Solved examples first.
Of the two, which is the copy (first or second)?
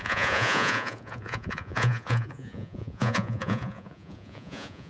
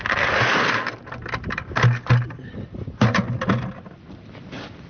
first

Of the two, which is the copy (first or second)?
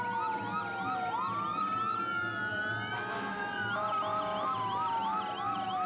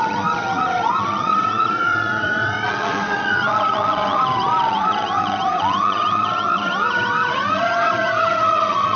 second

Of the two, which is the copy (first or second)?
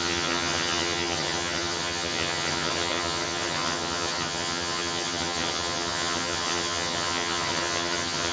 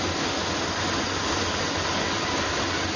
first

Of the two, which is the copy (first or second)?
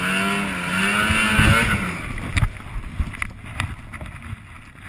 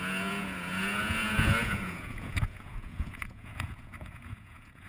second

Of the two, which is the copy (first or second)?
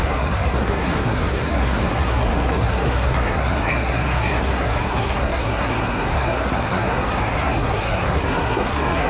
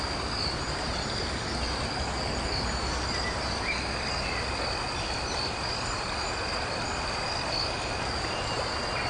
first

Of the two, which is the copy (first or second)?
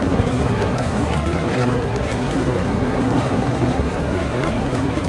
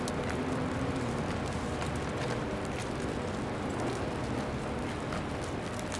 first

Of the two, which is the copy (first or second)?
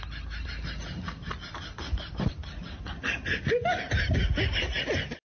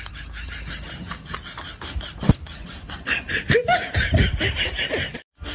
second